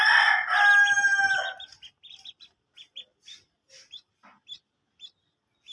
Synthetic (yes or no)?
no